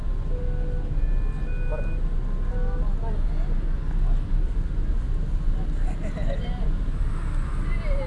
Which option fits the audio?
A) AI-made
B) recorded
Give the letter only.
B